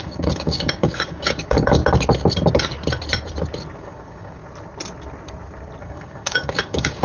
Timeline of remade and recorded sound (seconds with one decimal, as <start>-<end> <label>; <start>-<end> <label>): 0.0-1.8 remade; 1.8-3.8 recorded; 3.8-4.4 remade; 4.4-5.8 recorded; 5.8-7.0 remade